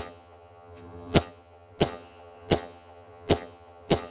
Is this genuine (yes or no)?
no